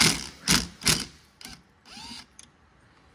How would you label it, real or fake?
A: real